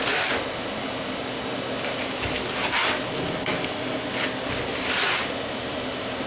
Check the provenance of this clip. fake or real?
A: real